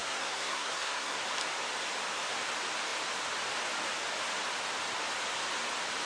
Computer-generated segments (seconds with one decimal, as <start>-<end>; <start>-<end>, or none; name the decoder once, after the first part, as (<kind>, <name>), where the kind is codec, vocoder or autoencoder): 0.0-1.2 (codec, SNAC)